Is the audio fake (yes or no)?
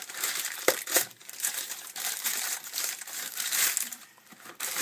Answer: yes